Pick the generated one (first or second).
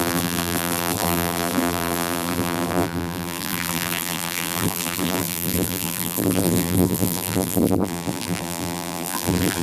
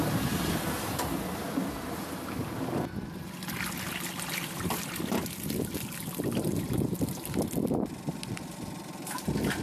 first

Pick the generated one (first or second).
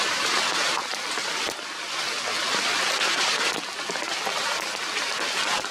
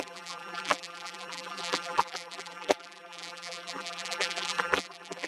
second